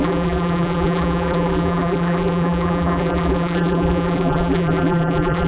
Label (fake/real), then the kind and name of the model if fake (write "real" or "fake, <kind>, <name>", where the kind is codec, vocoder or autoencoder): fake, vocoder, BigVGAN v2